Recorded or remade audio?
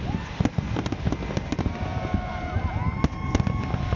recorded